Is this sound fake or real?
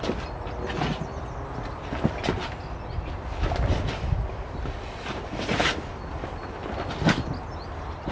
real